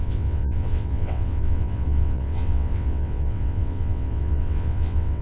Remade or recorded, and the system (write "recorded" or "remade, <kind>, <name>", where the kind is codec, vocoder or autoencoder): remade, vocoder, WaveNeXt